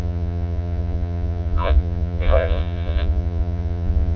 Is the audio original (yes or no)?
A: no